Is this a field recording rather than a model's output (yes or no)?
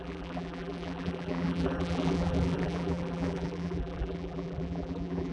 no